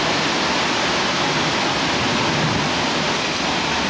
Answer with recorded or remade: recorded